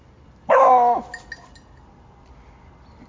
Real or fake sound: real